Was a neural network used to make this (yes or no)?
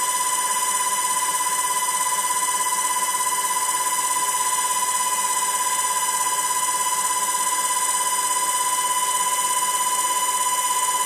no